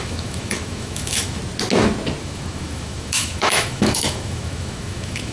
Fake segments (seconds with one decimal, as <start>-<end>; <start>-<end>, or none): 0.0-1.4; 2.2-5.3